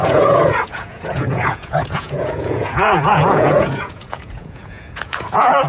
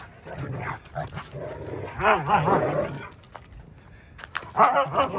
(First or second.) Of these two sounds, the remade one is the first